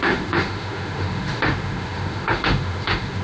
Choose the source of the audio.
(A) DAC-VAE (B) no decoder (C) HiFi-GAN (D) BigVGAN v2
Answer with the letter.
A